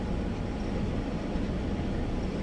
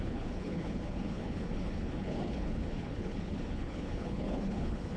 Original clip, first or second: first